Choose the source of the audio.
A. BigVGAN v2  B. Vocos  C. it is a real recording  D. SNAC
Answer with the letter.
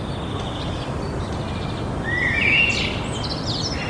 C